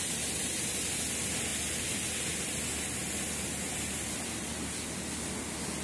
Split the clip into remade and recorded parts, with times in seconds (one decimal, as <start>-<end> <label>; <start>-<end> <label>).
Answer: 0.0-5.8 recorded